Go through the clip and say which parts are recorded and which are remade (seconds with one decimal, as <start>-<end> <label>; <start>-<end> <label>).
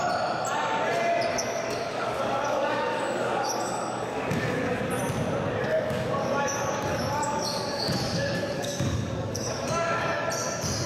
0.0-1.3 recorded; 1.3-4.8 remade; 4.8-5.6 recorded; 5.6-10.3 remade; 10.3-10.9 recorded